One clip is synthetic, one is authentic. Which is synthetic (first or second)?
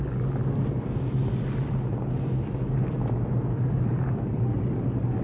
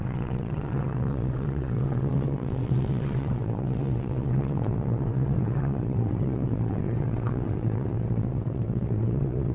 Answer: second